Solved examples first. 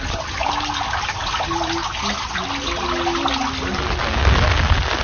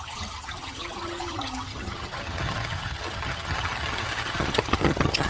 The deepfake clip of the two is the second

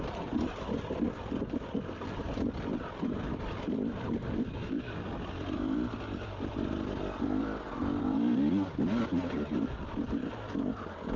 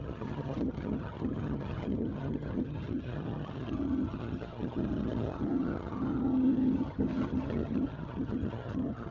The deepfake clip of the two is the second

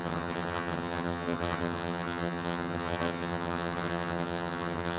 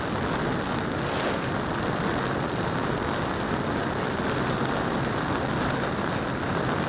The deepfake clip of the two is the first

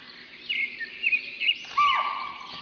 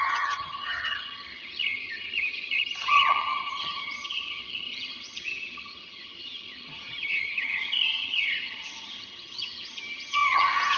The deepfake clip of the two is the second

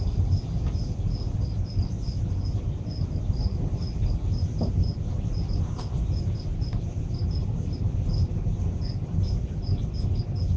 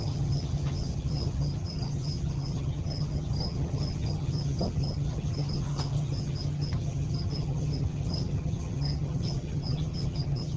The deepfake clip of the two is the second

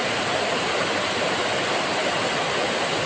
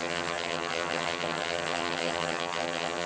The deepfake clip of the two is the second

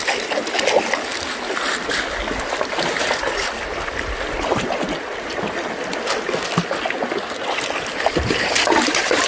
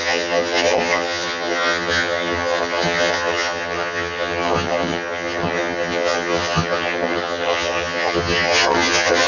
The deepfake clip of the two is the second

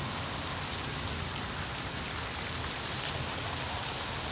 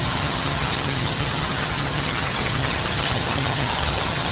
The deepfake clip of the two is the second